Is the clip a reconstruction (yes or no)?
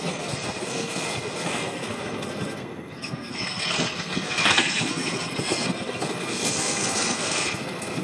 yes